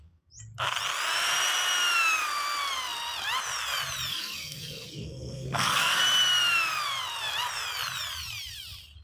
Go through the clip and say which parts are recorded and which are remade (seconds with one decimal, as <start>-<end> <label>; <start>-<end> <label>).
0.0-4.1 recorded; 4.1-6.0 remade; 6.0-9.0 recorded